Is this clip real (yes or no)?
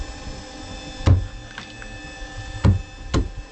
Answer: yes